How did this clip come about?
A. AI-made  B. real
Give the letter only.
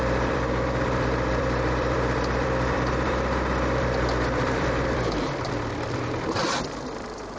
A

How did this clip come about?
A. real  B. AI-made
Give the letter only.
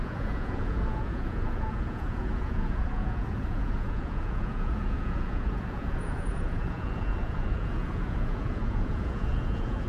B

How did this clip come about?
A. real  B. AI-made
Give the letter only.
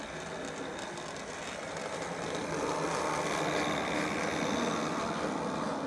A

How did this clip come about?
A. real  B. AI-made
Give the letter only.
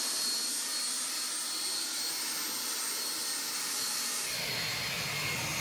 A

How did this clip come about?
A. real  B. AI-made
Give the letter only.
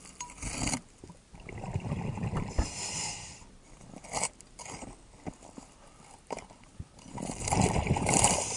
A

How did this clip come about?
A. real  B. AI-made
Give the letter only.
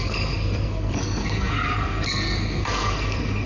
B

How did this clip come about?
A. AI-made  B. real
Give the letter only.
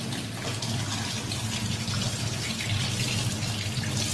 B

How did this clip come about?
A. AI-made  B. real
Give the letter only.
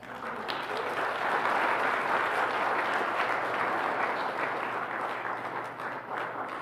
B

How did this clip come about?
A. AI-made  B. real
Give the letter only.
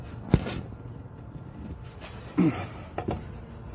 B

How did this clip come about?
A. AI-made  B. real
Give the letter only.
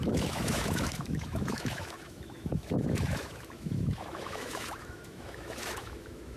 A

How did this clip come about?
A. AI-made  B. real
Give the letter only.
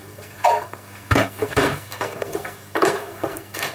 A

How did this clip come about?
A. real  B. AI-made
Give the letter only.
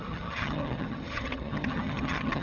B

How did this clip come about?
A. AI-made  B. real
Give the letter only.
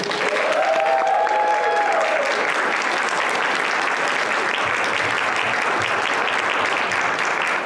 B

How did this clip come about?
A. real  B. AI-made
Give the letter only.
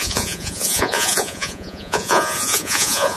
B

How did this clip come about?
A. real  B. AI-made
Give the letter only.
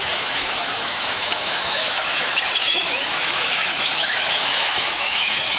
B